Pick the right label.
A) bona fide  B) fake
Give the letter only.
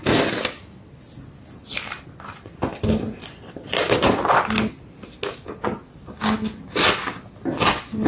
A